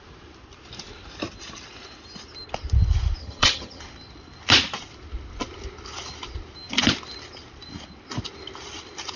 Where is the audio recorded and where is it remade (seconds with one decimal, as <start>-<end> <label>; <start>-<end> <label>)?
0.0-3.2 recorded; 3.2-3.8 remade; 3.8-9.2 recorded